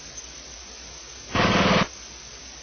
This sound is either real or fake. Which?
real